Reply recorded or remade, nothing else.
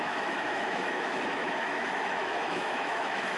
remade